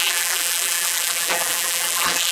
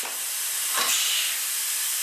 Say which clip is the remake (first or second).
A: first